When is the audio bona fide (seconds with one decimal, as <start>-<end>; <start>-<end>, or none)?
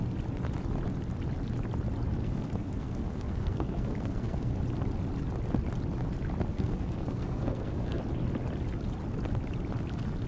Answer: 0.0-2.2; 4.5-6.5; 8.0-10.3